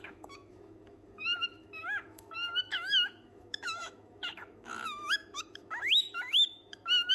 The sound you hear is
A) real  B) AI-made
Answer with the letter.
B